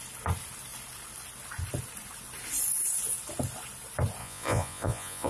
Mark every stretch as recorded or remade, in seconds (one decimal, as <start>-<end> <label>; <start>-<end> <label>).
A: 0.0-4.2 recorded; 4.2-5.3 remade